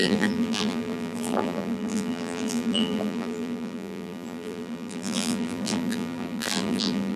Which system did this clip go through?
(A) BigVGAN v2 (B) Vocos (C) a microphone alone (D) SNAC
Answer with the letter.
A